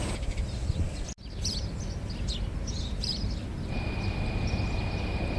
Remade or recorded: recorded